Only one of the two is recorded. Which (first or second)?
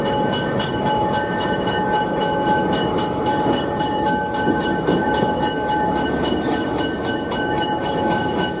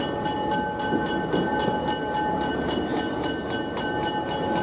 second